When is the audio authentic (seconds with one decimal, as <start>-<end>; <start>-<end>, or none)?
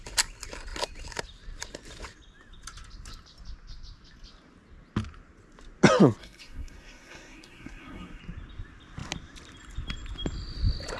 0.0-6.2; 8.2-11.0